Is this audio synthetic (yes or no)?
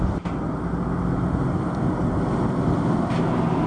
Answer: no